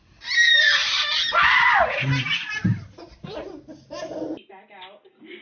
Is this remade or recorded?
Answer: recorded